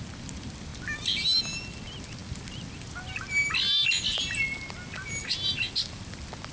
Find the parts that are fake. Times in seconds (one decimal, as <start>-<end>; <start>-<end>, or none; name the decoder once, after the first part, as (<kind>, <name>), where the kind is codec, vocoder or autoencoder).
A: none